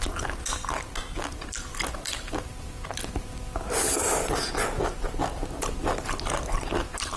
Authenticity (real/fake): real